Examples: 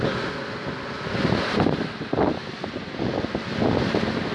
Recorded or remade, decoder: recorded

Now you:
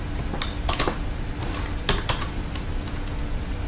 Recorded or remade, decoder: recorded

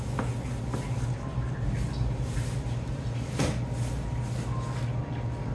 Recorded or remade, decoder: recorded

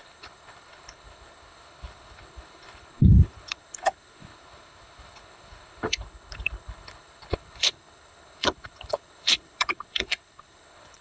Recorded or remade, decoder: remade, codec, HILCodec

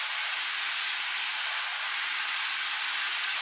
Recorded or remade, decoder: recorded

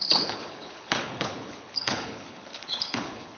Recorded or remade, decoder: remade, codec, HILCodec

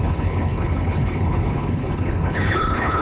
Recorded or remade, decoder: remade, codec, HILCodec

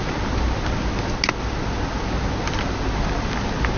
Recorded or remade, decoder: recorded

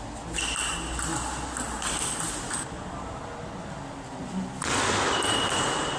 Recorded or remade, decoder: recorded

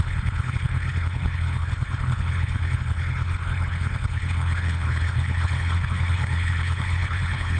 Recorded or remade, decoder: remade, codec, HILCodec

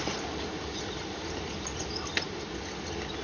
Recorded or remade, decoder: recorded